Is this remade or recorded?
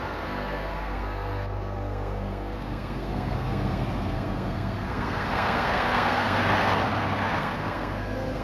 remade